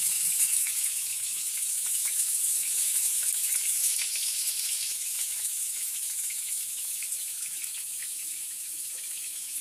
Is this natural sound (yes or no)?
no